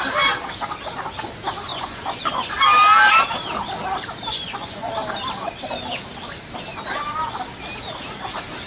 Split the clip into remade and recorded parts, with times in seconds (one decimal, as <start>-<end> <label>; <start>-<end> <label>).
0.0-1.7 recorded; 1.7-2.5 remade; 2.5-4.3 recorded; 4.3-4.9 remade; 4.9-8.7 recorded